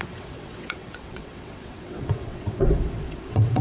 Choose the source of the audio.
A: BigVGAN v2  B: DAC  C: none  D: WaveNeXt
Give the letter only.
D